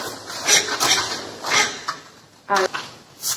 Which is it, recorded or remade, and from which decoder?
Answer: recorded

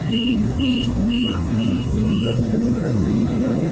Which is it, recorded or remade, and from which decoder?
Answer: remade, codec, SNAC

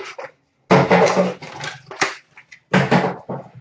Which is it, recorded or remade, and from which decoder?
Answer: recorded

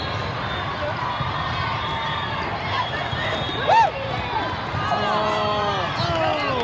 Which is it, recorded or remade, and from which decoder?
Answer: recorded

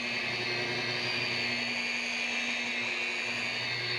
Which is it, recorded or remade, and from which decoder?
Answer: recorded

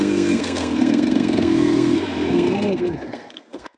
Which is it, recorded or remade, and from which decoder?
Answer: remade, codec, SNAC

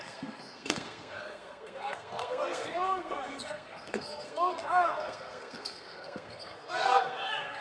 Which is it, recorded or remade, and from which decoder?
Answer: remade, codec, SNAC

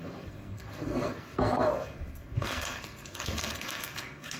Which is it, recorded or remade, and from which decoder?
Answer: remade, codec, SNAC